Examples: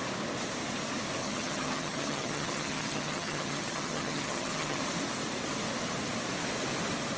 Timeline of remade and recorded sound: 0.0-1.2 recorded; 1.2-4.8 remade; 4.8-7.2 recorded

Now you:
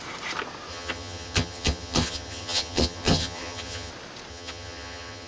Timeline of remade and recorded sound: 0.0-0.7 recorded; 0.7-3.9 remade; 3.9-4.3 recorded; 4.3-5.3 remade

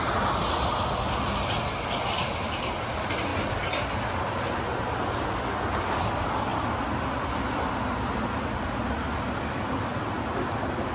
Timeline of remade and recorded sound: 0.0-10.9 recorded

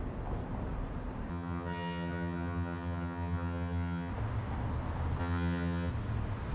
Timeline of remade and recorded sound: 0.0-1.3 recorded; 1.3-4.1 remade; 4.1-5.2 recorded; 5.2-5.9 remade; 5.9-6.5 recorded

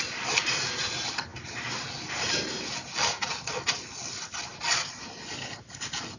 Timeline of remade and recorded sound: 0.0-6.2 recorded

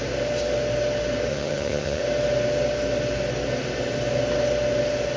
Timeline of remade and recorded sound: 0.0-1.3 recorded; 1.3-2.0 remade; 2.0-5.2 recorded

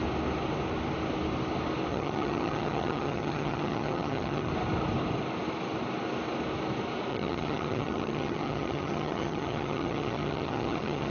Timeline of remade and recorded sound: 0.0-1.9 recorded; 1.9-4.5 remade; 4.5-7.1 recorded; 7.1-11.1 remade